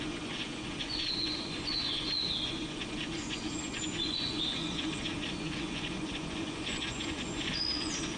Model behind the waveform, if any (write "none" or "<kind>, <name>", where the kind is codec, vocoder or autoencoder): vocoder, Vocos